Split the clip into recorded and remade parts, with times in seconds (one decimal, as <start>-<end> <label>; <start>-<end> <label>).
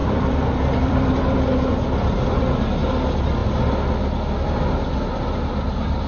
0.0-1.3 remade; 1.3-6.1 recorded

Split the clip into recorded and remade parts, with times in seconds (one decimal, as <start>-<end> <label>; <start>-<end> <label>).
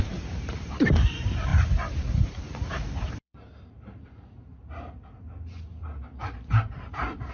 0.0-7.3 remade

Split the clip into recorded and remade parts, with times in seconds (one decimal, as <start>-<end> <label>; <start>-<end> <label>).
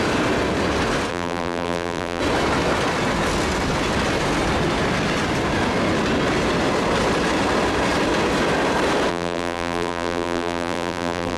0.0-1.1 recorded; 1.1-2.2 remade; 2.2-9.1 recorded; 9.1-11.4 remade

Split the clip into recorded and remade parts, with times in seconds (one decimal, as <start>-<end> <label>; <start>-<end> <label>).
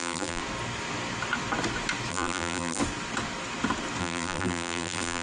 0.0-0.4 remade; 0.4-2.1 recorded; 2.1-2.8 remade; 2.8-4.0 recorded; 4.0-5.2 remade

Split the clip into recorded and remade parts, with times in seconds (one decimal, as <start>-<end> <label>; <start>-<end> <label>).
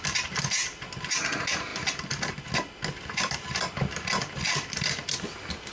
0.0-5.7 recorded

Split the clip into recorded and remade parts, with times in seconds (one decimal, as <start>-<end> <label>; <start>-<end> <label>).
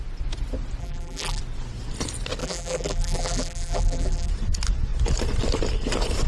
0.0-0.8 recorded; 0.8-1.4 remade; 1.4-2.4 recorded; 2.4-4.3 remade; 4.3-6.3 recorded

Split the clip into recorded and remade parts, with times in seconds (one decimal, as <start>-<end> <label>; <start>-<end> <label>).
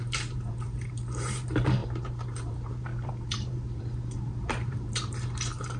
0.0-5.8 remade